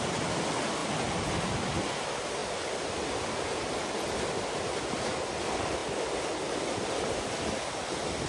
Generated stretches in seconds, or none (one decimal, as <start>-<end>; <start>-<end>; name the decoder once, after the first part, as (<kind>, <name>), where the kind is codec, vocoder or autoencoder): 0.8-1.7 (vocoder, BigVGAN v2); 5.8-6.6